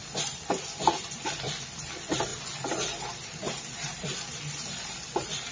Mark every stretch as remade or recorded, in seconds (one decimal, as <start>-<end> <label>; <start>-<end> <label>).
0.0-5.5 recorded